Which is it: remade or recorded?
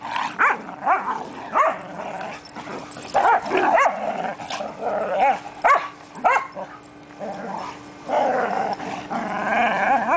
recorded